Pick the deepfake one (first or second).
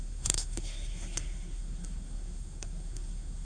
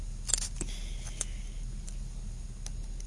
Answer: first